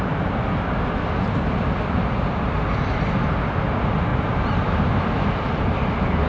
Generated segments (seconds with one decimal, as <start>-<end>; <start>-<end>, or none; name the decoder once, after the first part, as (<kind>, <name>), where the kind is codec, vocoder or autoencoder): none

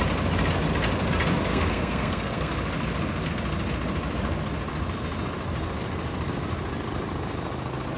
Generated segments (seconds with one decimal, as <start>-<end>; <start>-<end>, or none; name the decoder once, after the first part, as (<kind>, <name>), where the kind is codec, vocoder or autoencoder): 1.5-2.5 (codec, SNAC)

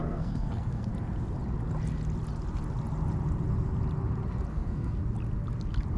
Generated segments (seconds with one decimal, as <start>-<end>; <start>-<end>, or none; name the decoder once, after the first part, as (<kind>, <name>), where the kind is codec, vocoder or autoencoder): 0.0-0.9 (codec, SNAC); 4.5-5.0